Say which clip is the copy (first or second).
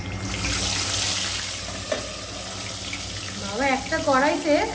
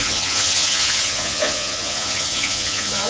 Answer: second